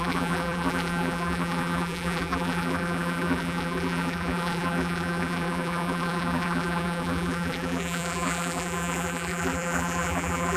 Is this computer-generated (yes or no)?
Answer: yes